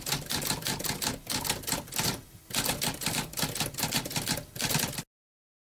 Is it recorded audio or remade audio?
recorded